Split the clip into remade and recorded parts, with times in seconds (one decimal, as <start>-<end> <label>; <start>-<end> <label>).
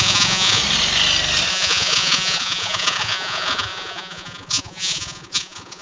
0.0-0.6 remade; 0.6-1.5 recorded; 1.5-5.8 remade